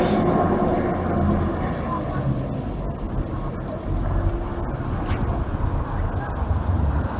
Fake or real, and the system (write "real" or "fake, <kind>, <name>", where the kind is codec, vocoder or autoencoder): real